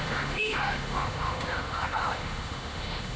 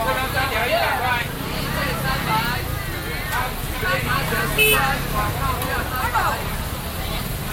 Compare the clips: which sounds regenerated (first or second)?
first